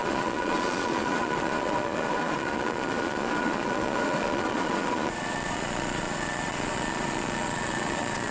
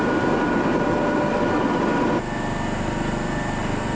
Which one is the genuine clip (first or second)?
second